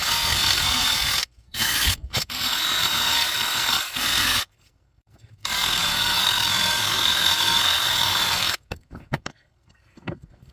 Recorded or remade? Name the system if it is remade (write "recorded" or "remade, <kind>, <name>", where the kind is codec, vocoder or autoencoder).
remade, codec, SNAC